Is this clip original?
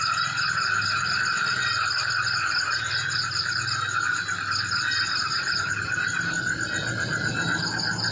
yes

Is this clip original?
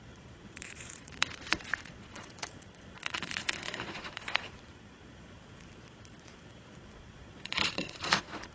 no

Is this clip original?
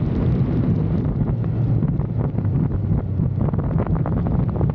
yes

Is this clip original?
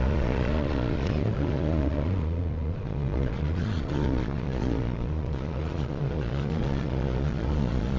no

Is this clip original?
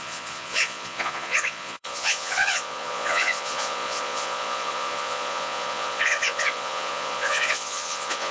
no